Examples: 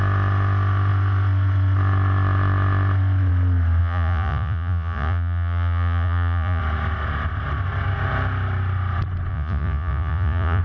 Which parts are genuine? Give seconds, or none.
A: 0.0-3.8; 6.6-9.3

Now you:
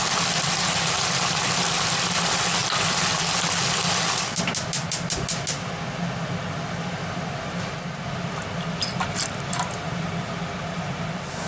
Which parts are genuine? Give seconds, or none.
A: 0.0-11.5

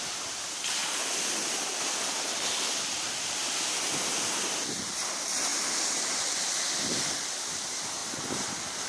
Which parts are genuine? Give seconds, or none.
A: 0.0-0.8; 5.1-5.5; 6.7-8.9